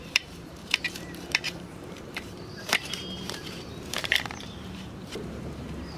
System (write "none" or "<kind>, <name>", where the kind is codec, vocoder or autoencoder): vocoder, BigVGAN v2